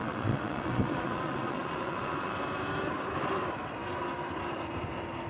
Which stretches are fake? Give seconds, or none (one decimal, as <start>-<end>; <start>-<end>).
0.0-2.4